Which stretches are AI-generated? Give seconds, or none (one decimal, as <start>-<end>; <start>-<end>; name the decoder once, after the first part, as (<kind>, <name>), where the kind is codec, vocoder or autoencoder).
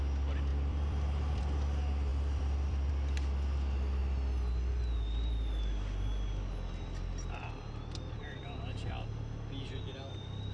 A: 0.5-1.4 (vocoder, BigVGAN v2); 2.1-2.9